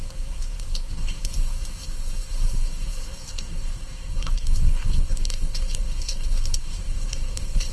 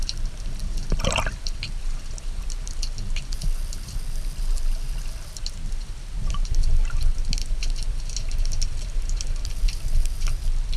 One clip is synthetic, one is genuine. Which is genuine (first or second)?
second